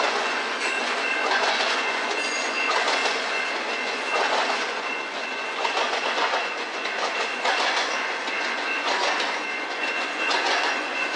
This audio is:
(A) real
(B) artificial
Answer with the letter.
B